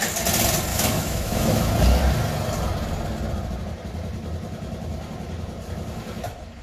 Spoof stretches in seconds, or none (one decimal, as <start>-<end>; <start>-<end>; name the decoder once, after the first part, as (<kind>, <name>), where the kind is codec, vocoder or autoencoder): 0.7-1.7 (autoencoder, DAC-VAE)